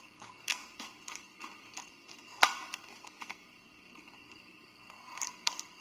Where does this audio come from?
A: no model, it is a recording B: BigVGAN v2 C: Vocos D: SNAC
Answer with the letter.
D